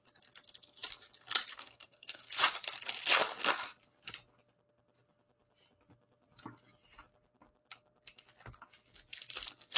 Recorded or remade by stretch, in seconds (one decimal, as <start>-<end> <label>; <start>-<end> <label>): 0.0-1.5 recorded; 1.5-2.4 remade; 2.4-9.8 recorded